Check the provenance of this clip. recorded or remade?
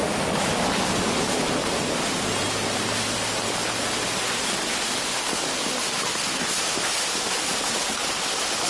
recorded